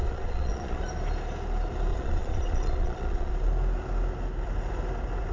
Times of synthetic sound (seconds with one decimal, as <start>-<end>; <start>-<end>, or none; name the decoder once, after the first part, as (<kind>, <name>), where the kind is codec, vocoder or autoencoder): 0.0-0.8 (vocoder, Vocos); 1.9-3.3